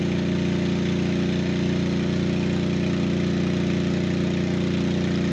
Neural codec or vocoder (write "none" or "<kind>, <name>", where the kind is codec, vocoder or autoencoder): none